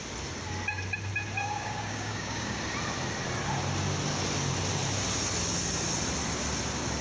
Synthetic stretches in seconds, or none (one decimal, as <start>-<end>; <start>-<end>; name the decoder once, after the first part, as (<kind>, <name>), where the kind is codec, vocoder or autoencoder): 1.4-2.6 (codec, DAC)